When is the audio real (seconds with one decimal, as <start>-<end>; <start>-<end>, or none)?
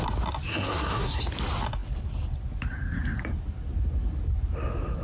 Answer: 0.0-0.5; 1.2-5.0